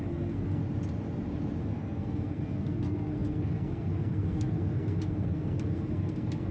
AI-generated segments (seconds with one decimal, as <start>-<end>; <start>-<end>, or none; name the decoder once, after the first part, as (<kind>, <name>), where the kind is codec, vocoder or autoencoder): 0.0-0.6 (codec, SNAC); 1.6-6.5